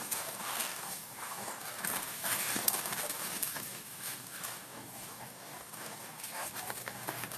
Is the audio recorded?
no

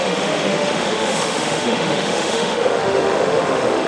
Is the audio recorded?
no